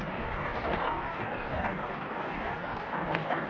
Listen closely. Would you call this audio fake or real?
fake